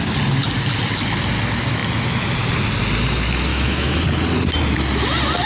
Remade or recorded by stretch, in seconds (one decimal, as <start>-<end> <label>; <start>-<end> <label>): 0.0-3.5 recorded; 3.5-4.0 remade; 4.0-5.5 recorded